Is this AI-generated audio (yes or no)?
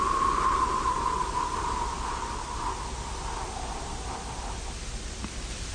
no